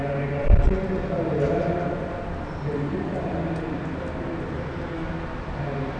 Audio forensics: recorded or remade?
recorded